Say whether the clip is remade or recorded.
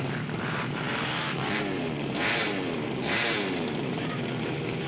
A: remade